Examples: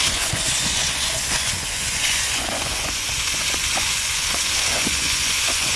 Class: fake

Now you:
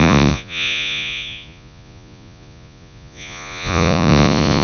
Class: fake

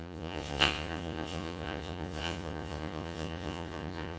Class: fake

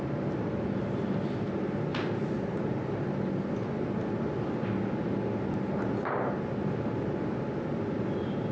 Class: real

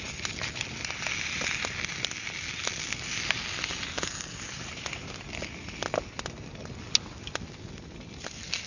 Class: real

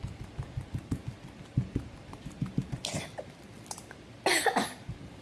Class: real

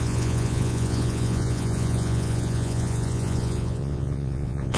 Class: fake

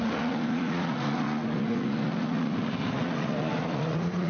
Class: fake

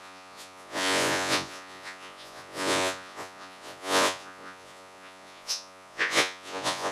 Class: fake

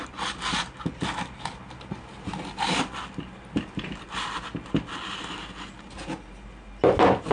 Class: real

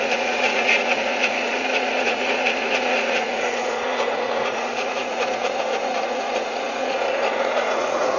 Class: fake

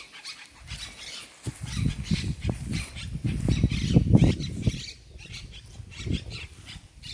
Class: real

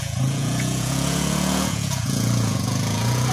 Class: fake